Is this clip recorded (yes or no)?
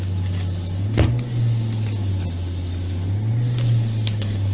yes